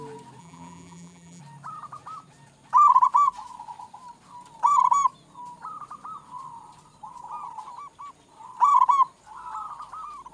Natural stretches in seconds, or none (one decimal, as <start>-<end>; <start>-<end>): 0.0-0.4; 1.4-10.3